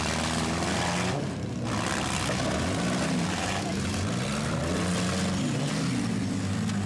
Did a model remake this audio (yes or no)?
no